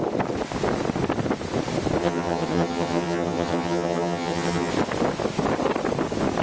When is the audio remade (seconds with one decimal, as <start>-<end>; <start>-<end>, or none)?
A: 2.0-4.7